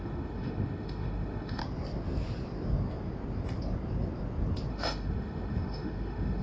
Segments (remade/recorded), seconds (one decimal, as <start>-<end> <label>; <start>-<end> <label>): 0.0-1.6 remade; 1.6-4.7 recorded; 4.7-6.4 remade